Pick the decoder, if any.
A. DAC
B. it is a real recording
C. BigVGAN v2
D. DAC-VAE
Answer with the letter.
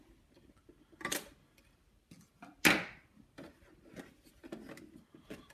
B